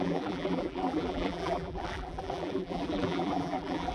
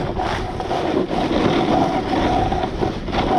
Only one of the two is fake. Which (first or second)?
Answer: first